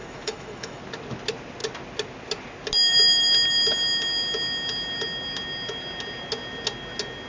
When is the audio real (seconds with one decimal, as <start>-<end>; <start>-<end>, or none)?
0.8-7.3

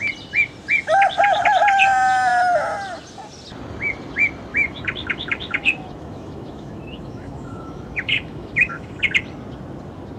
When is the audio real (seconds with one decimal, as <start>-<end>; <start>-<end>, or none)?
0.0-4.5; 9.0-10.2

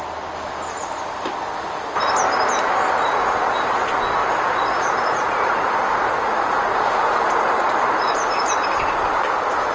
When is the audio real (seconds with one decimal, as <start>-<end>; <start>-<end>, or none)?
0.0-3.0; 3.7-4.2; 9.0-9.7

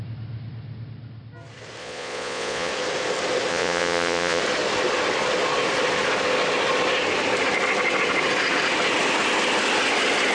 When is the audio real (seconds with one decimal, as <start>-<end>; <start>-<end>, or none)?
0.0-1.8; 2.7-3.5; 4.4-10.3

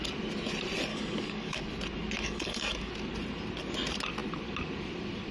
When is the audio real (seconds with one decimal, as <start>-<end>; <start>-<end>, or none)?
0.0-0.9; 1.6-2.2; 2.9-5.3